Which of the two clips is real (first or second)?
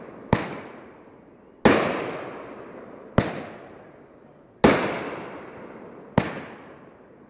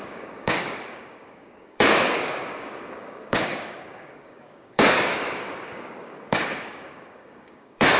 first